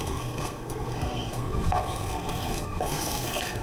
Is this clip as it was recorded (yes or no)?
no